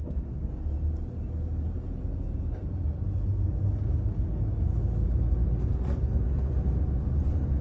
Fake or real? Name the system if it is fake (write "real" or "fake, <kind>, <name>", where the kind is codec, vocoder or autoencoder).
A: real